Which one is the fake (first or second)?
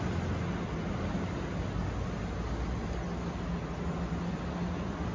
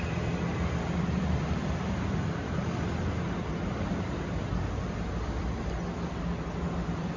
second